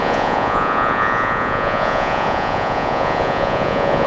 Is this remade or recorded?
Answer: remade